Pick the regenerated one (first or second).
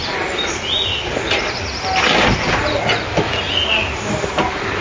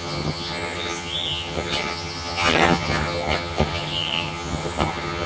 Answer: second